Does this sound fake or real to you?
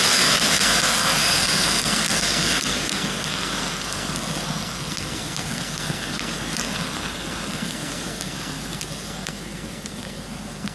fake